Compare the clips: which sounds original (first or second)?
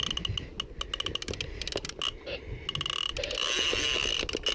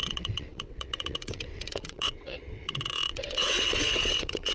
first